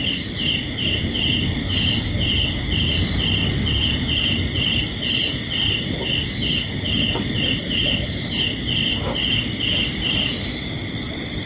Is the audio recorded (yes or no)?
no